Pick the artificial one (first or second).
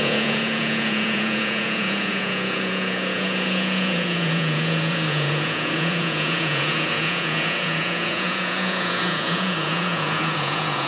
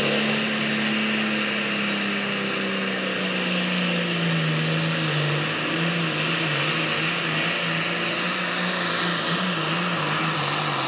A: first